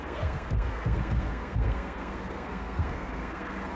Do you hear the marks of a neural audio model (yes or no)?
yes